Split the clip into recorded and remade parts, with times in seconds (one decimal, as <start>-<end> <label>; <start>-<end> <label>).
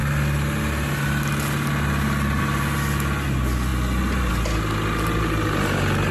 0.0-6.1 recorded